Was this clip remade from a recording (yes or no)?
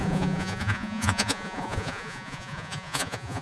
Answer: yes